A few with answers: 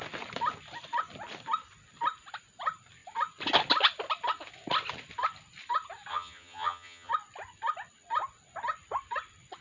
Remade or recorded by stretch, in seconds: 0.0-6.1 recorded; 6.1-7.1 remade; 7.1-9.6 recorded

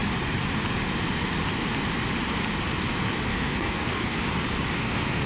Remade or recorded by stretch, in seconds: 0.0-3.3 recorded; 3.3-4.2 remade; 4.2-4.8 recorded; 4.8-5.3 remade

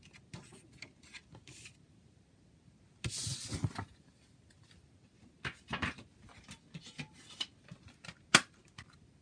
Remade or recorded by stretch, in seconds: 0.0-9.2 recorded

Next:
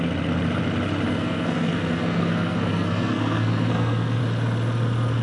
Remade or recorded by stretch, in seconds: 0.0-1.1 recorded; 1.1-4.2 remade; 4.2-5.2 recorded